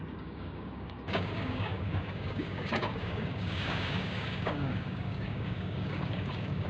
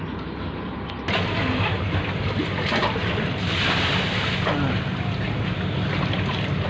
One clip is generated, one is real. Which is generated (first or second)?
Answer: first